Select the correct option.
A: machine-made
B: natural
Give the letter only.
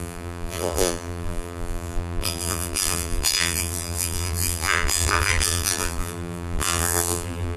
A